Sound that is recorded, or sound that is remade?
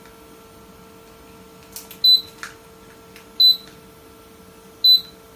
recorded